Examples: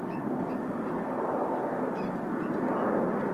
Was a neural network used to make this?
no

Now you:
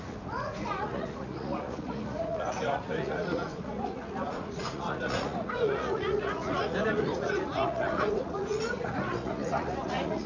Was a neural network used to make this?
yes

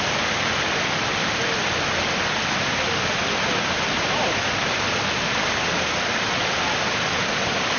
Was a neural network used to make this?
no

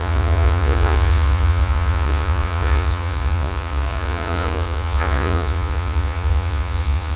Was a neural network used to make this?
yes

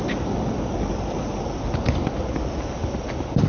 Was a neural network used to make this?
no